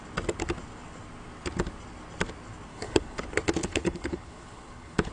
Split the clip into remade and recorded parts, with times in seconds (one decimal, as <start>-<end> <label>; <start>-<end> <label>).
0.0-2.7 recorded; 2.7-3.2 remade; 3.2-3.6 recorded; 3.6-5.1 remade